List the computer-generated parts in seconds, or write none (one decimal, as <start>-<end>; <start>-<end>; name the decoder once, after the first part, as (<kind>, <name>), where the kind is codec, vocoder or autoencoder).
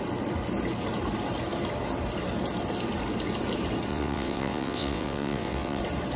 3.9-5.8 (vocoder, WaveNeXt)